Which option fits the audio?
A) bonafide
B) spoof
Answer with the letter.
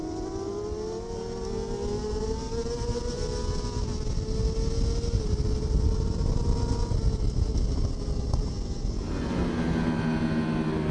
A